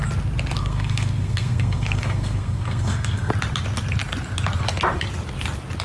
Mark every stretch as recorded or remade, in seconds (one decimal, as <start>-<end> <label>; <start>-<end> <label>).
0.0-0.6 recorded; 0.6-3.3 remade; 3.3-5.8 recorded